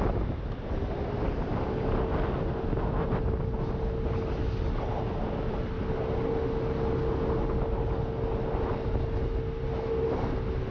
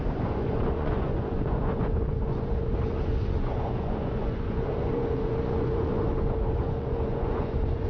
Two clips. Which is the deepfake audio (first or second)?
second